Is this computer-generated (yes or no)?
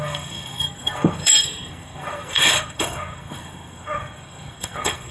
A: yes